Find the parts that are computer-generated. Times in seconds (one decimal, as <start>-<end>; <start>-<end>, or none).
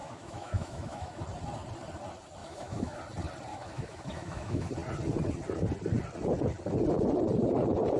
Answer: 0.0-1.2; 2.4-3.0; 3.5-4.7